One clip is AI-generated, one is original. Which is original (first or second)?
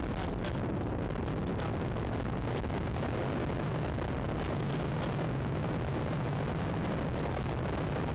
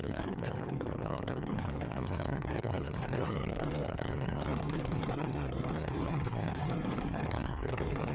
first